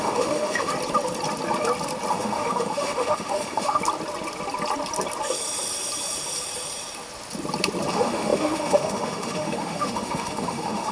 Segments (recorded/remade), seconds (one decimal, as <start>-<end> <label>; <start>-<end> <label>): 0.0-0.7 remade; 0.7-2.1 recorded; 2.1-3.8 remade; 3.8-7.9 recorded; 7.9-10.9 remade